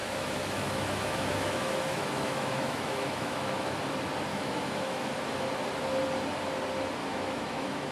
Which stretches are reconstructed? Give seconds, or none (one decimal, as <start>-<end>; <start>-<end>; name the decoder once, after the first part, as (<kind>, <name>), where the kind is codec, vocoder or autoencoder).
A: 0.0-3.8 (autoencoder, DAC-VAE); 4.3-5.1; 7.0-7.9